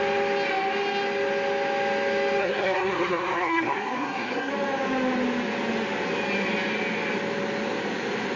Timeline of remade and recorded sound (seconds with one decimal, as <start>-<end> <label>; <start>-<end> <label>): 0.0-2.4 recorded; 2.4-4.5 remade; 4.5-8.4 recorded